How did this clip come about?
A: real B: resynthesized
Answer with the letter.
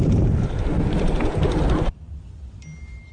A